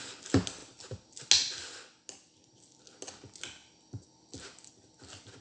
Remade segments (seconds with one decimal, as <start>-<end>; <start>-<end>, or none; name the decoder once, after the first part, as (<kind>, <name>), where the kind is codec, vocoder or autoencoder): none